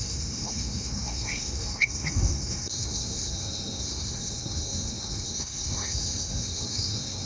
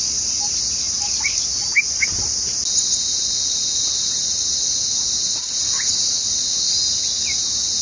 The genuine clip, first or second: second